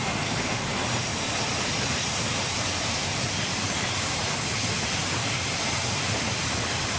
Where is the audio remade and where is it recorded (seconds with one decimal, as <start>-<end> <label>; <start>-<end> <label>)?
0.0-1.1 remade; 1.1-1.8 recorded; 1.8-5.8 remade; 5.8-6.4 recorded; 6.4-7.0 remade